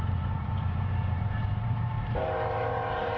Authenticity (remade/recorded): remade